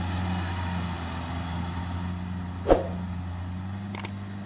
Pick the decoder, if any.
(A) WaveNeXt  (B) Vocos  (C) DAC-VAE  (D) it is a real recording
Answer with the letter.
D